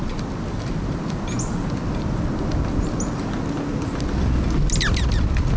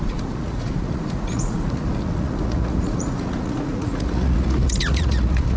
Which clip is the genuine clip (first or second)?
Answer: first